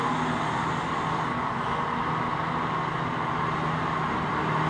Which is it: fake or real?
real